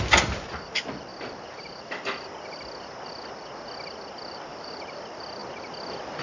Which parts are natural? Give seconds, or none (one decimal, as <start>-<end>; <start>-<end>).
0.0-1.1; 1.8-4.5; 5.0-6.2